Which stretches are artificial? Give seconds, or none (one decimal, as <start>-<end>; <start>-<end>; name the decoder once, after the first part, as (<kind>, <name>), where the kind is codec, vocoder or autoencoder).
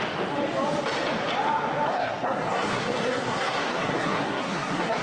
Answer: 1.9-5.0 (codec, SNAC)